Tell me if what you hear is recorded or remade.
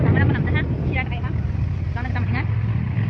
recorded